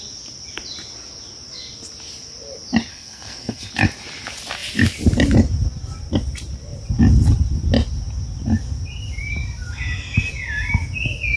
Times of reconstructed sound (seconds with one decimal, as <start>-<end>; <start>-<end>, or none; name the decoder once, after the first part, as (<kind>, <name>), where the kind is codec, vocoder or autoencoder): 2.9-3.7 (codec, SNAC)